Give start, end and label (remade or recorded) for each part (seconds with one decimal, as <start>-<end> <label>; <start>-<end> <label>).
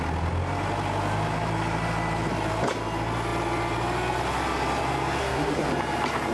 0.0-5.2 recorded; 5.2-5.7 remade; 5.7-6.3 recorded